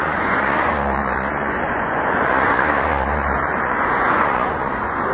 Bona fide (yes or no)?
no